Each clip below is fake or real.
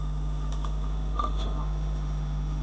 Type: fake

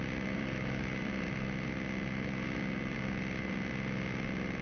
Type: real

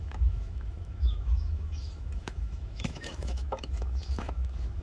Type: fake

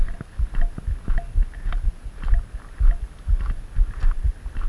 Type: real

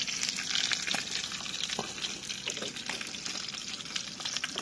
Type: real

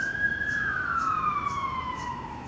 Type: fake